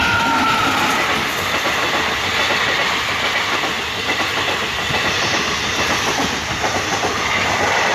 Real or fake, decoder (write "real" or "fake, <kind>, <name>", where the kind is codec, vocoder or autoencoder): real